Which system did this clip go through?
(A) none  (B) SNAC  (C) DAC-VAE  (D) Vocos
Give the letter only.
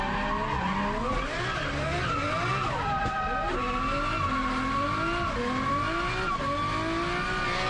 A